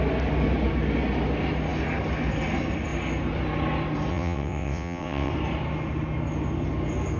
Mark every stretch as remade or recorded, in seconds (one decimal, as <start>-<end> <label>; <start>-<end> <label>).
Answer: 0.0-4.1 recorded; 4.1-5.3 remade; 5.3-7.2 recorded